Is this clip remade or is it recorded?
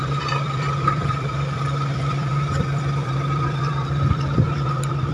remade